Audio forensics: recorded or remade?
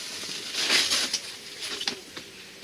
recorded